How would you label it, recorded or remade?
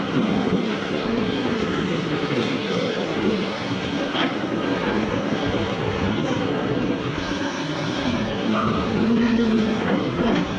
remade